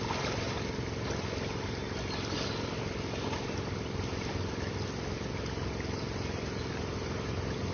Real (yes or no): yes